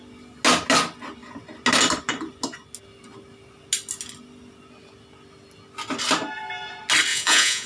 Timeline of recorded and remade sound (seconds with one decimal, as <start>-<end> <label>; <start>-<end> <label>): 0.0-7.1 recorded; 7.1-7.7 remade